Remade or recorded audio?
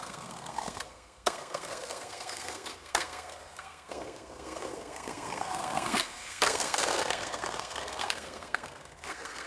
remade